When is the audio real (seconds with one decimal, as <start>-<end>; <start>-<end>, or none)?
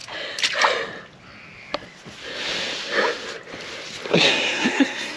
0.0-4.1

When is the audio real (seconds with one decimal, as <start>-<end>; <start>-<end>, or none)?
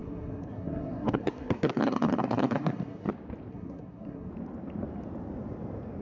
3.1-3.5; 4.3-6.0